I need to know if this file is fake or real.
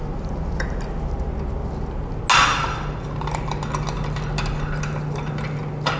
real